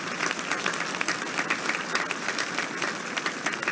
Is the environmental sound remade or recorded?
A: recorded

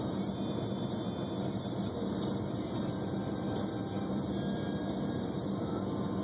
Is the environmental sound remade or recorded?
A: recorded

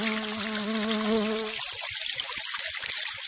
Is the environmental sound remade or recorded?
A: recorded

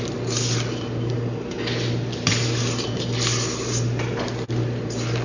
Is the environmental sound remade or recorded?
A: recorded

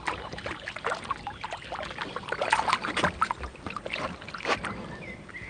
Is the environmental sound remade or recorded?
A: recorded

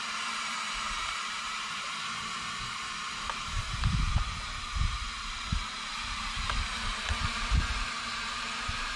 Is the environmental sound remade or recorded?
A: remade